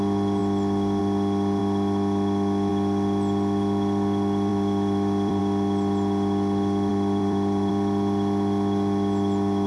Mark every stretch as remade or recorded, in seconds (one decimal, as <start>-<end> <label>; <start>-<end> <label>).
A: 0.0-4.5 recorded; 4.5-5.4 remade; 5.4-6.9 recorded; 6.9-7.7 remade; 7.7-9.7 recorded